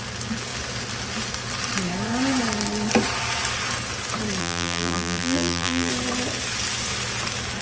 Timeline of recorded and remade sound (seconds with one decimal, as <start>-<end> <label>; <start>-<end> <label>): 0.0-4.4 recorded; 4.4-5.9 remade; 5.9-7.6 recorded